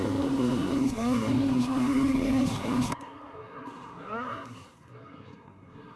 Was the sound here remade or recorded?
remade